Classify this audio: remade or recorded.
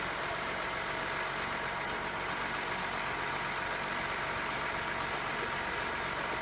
recorded